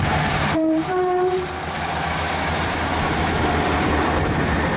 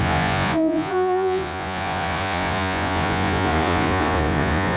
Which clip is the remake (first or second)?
second